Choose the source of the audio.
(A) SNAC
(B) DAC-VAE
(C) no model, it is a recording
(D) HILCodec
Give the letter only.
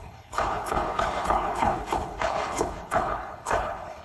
D